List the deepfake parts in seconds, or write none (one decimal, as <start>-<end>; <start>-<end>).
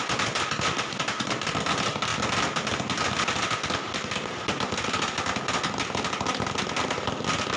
0.0-2.1; 6.6-7.6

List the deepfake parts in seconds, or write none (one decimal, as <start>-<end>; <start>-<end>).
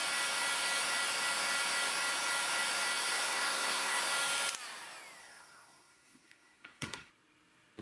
3.0-4.0; 5.2-7.1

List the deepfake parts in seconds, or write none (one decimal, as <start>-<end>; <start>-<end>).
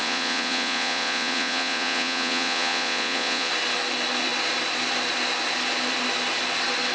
0.0-3.5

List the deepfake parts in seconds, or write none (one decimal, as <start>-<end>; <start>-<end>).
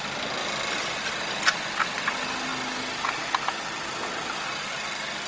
none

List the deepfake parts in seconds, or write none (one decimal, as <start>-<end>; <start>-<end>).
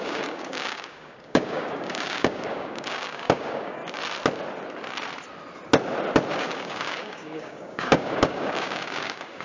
0.0-3.8; 6.3-9.4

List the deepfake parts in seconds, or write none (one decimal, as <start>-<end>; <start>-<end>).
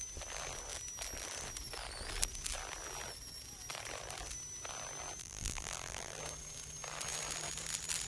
5.2-6.2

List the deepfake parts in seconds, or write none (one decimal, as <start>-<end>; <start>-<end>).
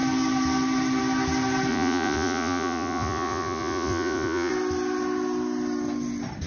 1.7-4.5